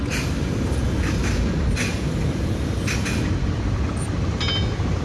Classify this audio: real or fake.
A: real